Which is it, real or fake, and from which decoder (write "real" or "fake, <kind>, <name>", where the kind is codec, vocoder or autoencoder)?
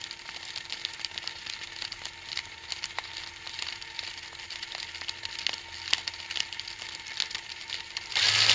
real